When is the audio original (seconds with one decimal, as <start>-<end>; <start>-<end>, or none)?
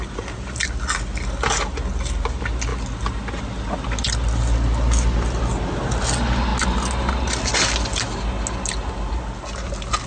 0.0-10.1